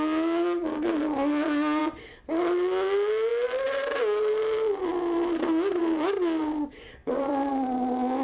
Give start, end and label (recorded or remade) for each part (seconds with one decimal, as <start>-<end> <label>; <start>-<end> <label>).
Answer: 0.0-7.0 recorded; 7.0-7.5 remade; 7.5-8.2 recorded